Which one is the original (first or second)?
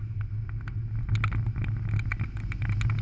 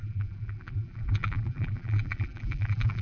first